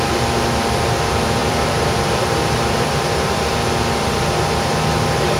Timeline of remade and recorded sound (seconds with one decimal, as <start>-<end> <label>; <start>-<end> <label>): 0.0-1.4 recorded; 1.4-4.6 remade; 4.6-5.4 recorded